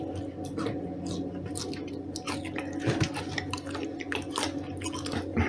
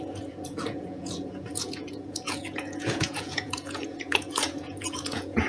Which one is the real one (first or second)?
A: first